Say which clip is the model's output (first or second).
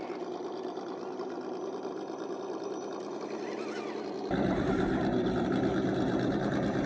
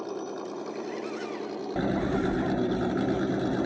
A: first